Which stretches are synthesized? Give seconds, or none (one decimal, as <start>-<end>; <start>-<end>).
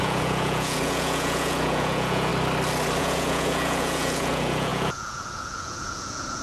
0.0-2.3; 3.0-6.4